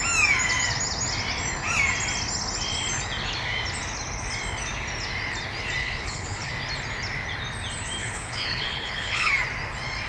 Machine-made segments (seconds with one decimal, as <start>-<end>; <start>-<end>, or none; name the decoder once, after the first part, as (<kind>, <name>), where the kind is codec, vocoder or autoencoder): 5.8-6.5 (codec, HILCodec); 8.0-9.3